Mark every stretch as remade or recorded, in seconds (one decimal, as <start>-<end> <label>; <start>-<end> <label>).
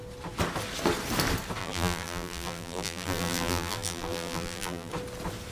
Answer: 0.0-1.6 recorded; 1.6-4.9 remade; 4.9-5.5 recorded